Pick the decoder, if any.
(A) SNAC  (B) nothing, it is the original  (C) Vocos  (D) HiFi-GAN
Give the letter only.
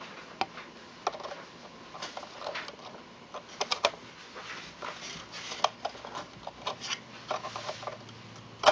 B